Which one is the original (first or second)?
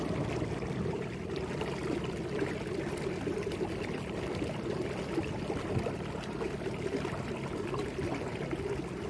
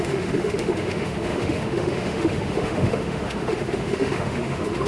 first